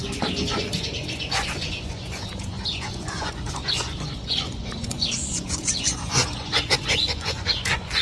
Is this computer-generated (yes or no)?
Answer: yes